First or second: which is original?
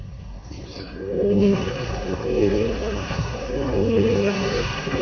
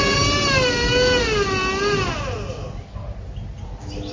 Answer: second